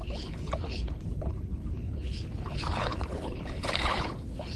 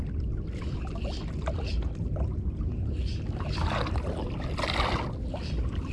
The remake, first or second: first